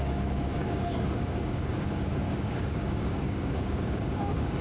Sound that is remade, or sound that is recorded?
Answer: remade